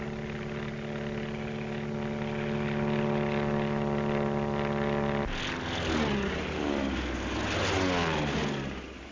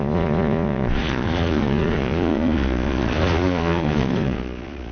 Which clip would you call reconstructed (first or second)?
second